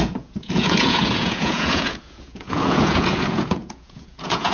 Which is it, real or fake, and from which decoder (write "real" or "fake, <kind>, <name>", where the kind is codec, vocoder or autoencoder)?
fake, vocoder, Vocos